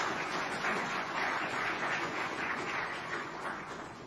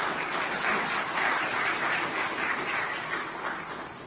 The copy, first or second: first